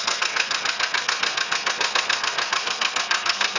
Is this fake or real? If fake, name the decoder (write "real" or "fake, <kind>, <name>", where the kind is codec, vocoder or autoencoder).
fake, codec, SNAC